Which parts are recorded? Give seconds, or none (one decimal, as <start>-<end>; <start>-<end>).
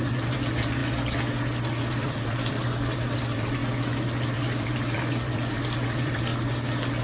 0.8-1.8; 3.6-4.3; 6.3-7.0